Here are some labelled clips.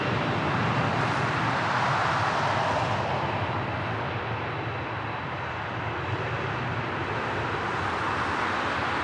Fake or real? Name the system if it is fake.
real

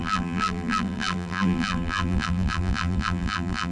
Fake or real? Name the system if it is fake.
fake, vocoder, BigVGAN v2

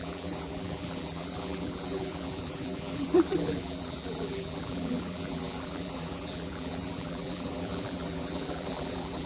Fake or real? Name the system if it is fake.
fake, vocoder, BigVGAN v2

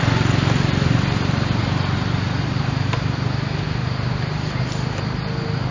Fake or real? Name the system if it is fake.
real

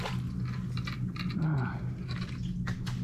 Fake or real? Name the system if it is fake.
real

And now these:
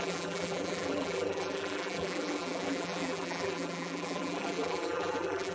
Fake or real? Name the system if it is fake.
fake, vocoder, BigVGAN v2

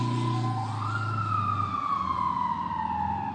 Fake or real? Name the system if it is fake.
real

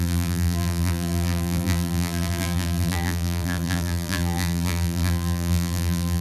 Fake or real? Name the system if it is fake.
fake, vocoder, BigVGAN v2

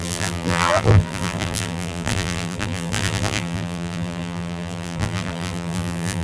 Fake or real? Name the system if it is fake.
fake, vocoder, BigVGAN v2